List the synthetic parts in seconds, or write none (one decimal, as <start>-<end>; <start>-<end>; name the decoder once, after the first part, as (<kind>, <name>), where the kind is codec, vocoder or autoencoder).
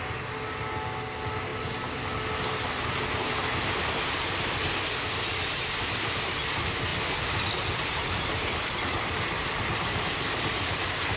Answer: none